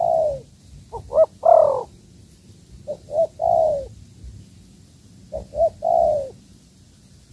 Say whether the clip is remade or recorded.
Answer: recorded